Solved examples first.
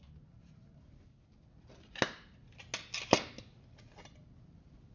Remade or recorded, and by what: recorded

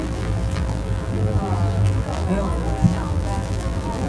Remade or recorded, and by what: remade, vocoder, BigVGAN v2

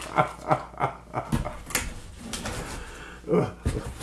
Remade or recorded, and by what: recorded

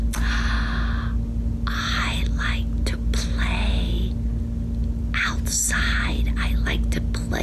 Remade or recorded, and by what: recorded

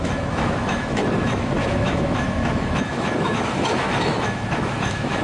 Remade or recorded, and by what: remade, autoencoder, DAC-VAE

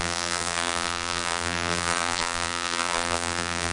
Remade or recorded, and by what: remade, vocoder, BigVGAN v2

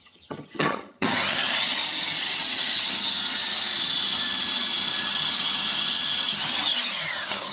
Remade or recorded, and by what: remade, vocoder, HiFi-GAN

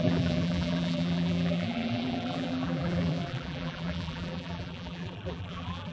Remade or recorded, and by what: remade, vocoder, BigVGAN v2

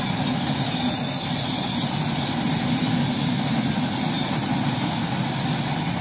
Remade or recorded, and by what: recorded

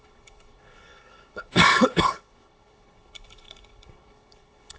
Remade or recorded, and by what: remade, codec, HILCodec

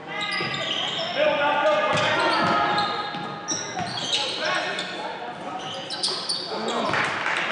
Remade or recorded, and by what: recorded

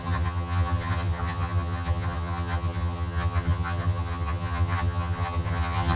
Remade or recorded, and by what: remade, vocoder, HiFi-GAN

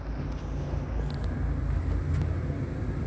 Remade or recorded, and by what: recorded